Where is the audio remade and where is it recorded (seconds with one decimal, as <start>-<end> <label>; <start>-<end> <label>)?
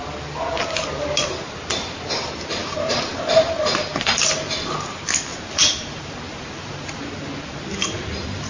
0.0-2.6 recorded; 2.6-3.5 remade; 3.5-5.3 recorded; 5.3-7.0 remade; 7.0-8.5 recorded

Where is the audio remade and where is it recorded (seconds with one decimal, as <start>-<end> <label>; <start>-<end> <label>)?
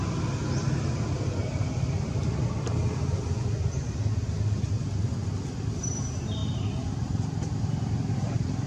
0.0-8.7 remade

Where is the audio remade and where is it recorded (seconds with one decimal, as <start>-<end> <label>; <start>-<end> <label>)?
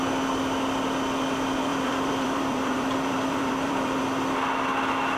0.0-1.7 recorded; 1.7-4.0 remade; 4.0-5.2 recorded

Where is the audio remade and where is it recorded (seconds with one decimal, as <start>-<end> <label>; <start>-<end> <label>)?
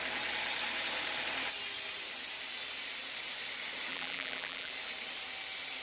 0.0-3.9 recorded; 3.9-4.7 remade; 4.7-5.8 recorded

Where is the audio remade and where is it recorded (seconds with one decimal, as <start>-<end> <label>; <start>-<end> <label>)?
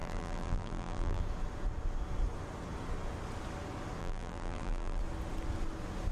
0.0-1.2 remade; 1.2-4.0 recorded; 4.0-5.0 remade; 5.0-6.1 recorded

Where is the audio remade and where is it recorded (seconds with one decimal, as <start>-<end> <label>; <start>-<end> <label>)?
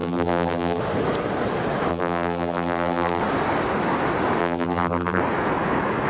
0.0-0.8 remade; 0.8-1.9 recorded; 1.9-3.2 remade; 3.2-4.4 recorded; 4.4-5.2 remade; 5.2-6.1 recorded